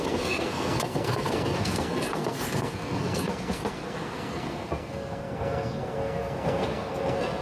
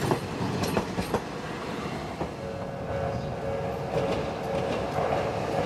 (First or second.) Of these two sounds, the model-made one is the first